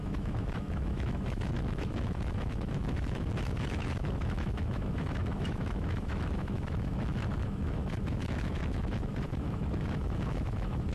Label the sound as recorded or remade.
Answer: remade